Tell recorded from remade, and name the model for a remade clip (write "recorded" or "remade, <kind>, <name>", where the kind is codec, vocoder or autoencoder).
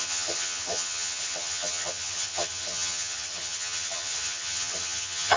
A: remade, vocoder, HiFi-GAN